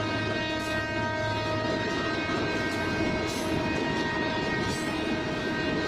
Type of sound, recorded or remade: recorded